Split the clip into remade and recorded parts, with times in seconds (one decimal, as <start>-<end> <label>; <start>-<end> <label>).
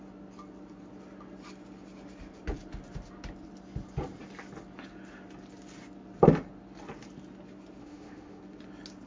0.0-7.8 recorded; 7.8-8.4 remade; 8.4-9.1 recorded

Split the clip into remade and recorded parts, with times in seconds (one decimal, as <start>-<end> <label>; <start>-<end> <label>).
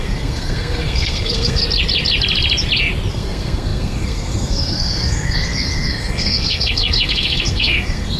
0.0-1.6 remade; 1.6-3.1 recorded; 3.1-8.2 remade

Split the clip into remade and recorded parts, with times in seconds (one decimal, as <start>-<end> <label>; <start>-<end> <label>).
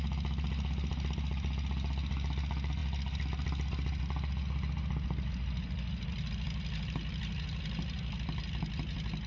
0.0-9.3 recorded